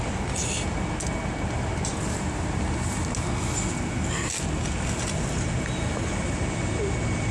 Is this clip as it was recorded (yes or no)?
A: yes